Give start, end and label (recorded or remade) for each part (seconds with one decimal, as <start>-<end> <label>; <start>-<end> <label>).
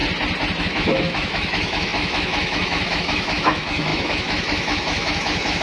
0.0-0.6 recorded; 0.6-5.6 remade